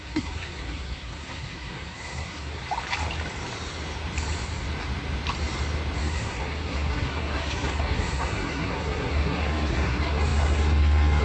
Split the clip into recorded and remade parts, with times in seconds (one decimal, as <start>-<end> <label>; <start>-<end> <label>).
0.0-2.6 remade; 2.6-6.0 recorded; 6.0-11.2 remade